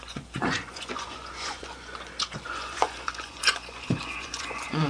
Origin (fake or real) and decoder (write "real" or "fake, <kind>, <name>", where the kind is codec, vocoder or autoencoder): fake, vocoder, Vocos